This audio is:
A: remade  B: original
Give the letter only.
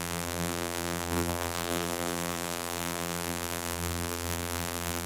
A